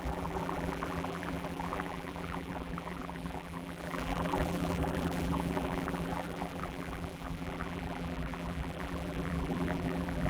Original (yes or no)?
no